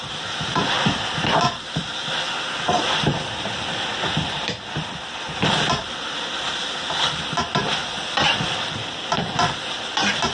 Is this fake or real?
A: real